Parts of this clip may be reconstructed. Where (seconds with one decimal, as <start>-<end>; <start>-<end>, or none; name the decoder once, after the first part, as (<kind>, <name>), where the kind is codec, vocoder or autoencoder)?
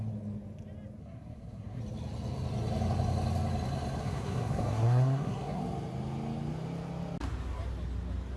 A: 1.0-1.8 (codec, SNAC); 4.0-5.6